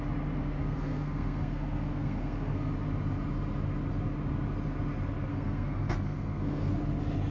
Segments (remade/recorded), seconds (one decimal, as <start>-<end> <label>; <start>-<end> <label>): 0.0-0.6 recorded; 0.6-2.7 remade; 2.7-5.3 recorded; 5.3-6.7 remade; 6.7-7.3 recorded